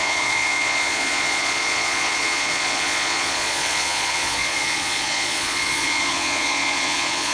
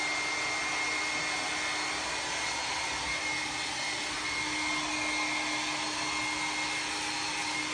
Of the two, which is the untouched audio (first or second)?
second